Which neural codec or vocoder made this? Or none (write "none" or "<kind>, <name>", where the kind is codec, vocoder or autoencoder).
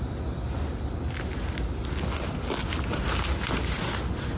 none